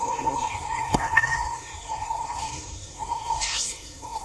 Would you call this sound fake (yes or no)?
yes